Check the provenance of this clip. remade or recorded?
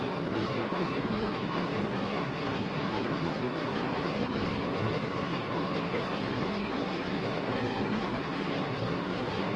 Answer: remade